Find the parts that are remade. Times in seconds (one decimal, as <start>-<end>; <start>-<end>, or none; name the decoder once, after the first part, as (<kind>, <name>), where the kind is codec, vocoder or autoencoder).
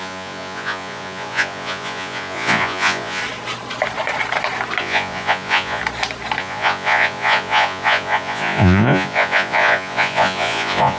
0.0-3.2 (vocoder, Vocos); 4.8-5.8; 6.4-11.0